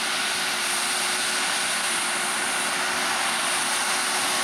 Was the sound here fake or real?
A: real